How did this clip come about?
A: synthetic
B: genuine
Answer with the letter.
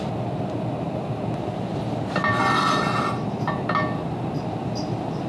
B